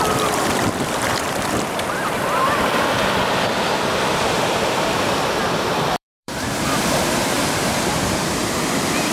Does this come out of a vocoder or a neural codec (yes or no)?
yes